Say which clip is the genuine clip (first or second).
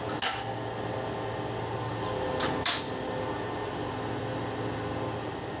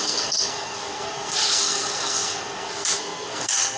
first